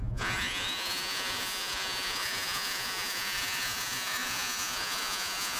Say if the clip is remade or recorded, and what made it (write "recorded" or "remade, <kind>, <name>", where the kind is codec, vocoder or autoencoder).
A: remade, vocoder, Vocos